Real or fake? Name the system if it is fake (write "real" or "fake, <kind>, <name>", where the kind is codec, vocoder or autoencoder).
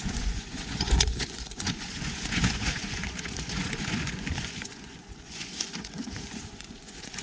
fake, vocoder, Vocos